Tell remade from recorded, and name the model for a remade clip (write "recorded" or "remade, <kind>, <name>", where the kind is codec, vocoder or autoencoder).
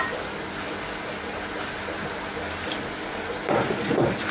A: recorded